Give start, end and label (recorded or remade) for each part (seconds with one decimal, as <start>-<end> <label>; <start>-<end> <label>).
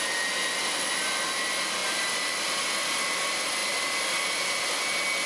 0.0-5.3 recorded